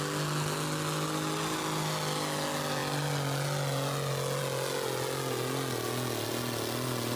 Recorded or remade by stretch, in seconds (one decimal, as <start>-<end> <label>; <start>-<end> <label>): 0.0-7.2 recorded